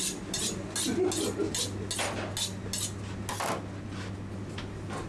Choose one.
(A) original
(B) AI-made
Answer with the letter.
A